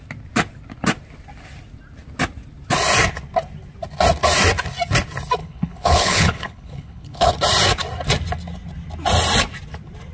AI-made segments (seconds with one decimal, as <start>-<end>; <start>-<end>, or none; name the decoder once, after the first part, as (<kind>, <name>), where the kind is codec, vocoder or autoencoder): 5.4-7.3 (codec, HILCodec)